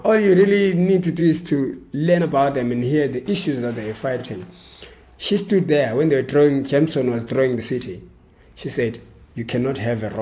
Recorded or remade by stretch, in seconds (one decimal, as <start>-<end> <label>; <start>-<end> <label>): 0.0-1.2 recorded; 1.2-1.9 remade; 1.9-10.2 recorded